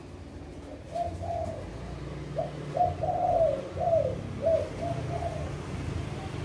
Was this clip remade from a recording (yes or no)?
no